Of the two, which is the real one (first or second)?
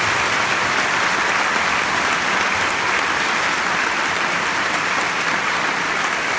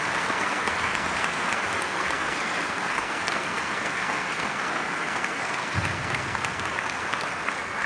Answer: first